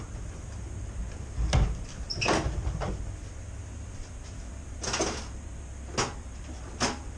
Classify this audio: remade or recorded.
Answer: recorded